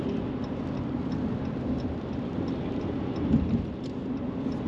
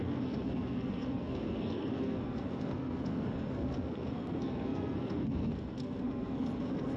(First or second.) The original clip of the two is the first